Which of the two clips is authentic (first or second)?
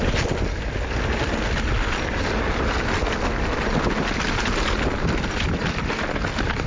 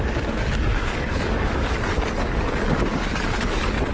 first